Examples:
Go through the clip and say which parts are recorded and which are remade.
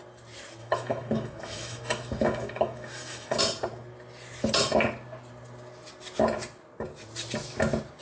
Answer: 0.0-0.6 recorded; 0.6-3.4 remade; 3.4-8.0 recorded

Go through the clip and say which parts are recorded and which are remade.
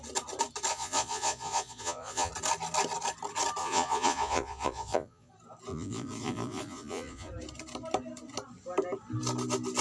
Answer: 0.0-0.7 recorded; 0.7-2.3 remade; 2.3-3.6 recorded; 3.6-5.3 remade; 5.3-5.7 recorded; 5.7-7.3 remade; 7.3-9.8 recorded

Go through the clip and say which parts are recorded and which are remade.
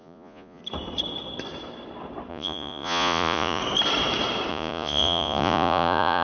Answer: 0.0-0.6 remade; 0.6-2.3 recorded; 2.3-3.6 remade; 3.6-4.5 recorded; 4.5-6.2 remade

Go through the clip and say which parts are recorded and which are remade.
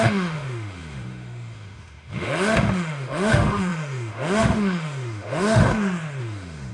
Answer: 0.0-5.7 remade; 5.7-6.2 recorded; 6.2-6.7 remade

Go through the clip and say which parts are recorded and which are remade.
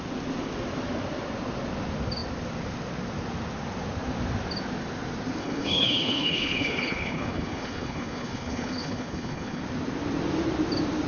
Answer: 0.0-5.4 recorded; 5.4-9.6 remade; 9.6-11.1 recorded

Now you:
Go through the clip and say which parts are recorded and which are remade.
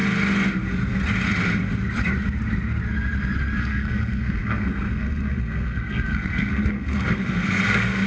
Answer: 0.0-3.6 recorded; 3.6-8.1 remade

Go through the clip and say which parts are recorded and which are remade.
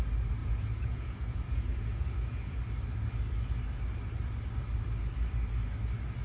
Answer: 0.0-0.4 recorded; 0.4-2.6 remade; 2.6-6.2 recorded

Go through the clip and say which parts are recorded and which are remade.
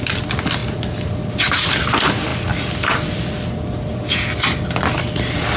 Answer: 0.0-5.6 recorded